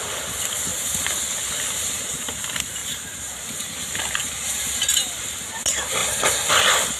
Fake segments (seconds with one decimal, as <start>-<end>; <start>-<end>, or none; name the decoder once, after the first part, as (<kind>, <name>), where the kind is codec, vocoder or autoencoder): 0.7-1.2 (vocoder, BigVGAN v2); 2.8-3.9; 6.0-6.5